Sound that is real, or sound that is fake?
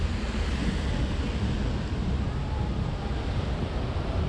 real